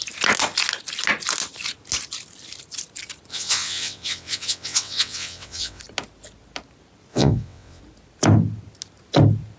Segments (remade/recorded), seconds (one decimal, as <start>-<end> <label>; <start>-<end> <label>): 0.0-3.3 recorded; 3.3-5.8 remade; 5.8-7.1 recorded; 7.1-7.8 remade; 7.8-9.6 recorded